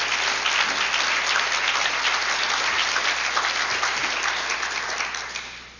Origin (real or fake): real